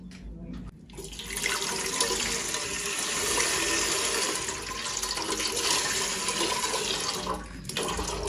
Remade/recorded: recorded